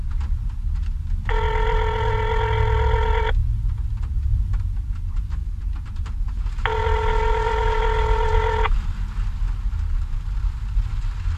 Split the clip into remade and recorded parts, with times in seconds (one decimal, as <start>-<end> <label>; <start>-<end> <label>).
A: 0.0-11.4 recorded